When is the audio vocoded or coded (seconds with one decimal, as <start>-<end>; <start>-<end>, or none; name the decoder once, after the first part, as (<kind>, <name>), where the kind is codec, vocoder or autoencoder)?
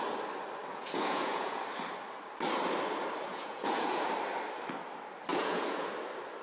0.7-1.6 (vocoder, Vocos); 3.3-4.0; 5.3-5.9